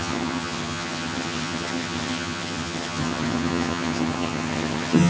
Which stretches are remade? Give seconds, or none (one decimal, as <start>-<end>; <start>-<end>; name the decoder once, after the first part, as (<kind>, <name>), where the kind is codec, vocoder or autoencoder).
0.0-5.1 (vocoder, HiFi-GAN)